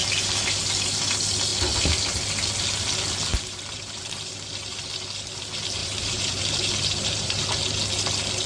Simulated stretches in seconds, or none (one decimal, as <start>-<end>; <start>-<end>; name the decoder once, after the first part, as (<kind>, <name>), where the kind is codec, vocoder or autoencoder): 3.3-4.3 (vocoder, BigVGAN v2); 5.8-7.4